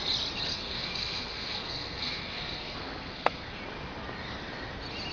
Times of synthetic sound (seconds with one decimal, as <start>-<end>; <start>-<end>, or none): 0.5-3.6